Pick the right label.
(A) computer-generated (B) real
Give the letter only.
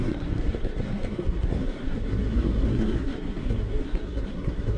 A